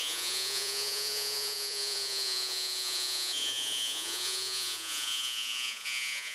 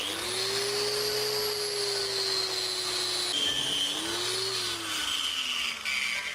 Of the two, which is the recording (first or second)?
second